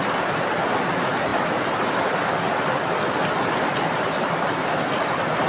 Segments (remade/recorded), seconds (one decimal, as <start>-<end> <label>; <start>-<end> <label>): 0.0-5.5 recorded